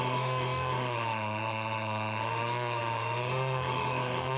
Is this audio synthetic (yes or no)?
yes